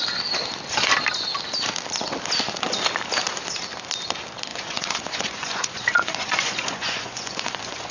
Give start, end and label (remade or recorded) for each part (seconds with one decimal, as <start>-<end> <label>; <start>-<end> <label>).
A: 0.0-4.5 recorded; 4.5-7.9 remade